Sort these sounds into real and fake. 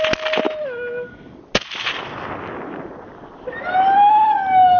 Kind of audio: real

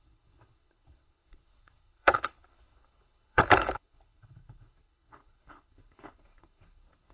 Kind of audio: fake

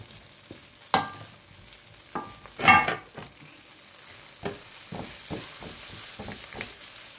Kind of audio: real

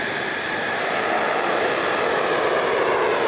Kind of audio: real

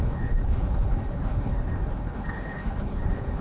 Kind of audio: fake